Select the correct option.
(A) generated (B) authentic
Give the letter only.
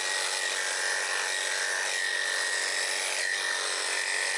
B